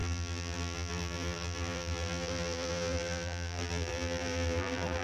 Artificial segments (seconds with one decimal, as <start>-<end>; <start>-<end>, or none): 0.0-5.0

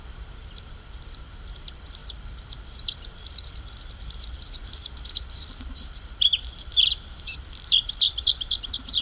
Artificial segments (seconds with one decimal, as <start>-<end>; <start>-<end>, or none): 0.0-9.0

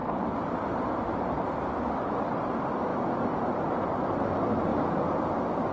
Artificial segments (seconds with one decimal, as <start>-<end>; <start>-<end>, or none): 0.0-1.7; 2.9-4.2

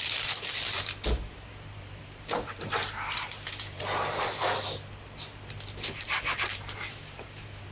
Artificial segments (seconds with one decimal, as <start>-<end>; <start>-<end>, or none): 0.0-4.4; 5.9-7.7

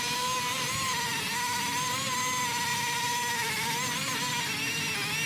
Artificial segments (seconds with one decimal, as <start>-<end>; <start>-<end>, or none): 2.7-3.2

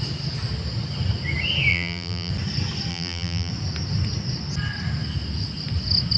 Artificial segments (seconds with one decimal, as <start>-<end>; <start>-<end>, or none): 1.7-2.3; 2.9-3.5